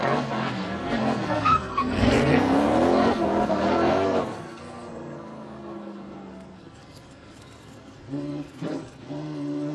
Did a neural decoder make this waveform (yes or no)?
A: yes